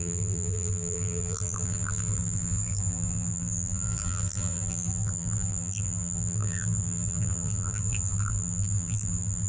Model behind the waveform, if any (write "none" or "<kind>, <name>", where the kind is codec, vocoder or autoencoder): vocoder, BigVGAN v2